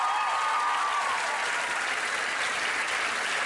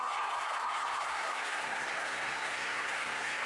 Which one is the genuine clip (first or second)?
first